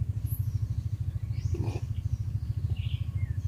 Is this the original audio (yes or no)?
yes